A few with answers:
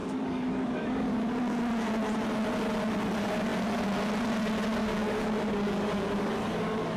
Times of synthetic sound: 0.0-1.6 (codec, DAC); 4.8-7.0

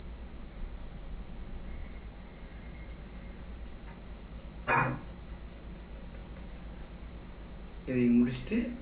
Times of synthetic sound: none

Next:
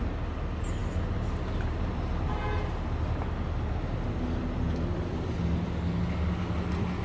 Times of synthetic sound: none

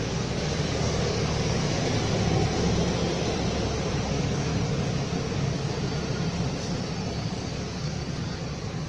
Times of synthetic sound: 0.0-1.6 (codec, DAC); 4.0-4.5; 7.1-8.9

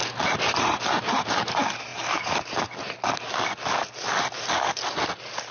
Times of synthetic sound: none

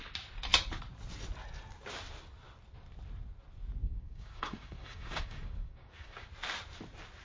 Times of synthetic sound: 3.8-6.3 (codec, DAC)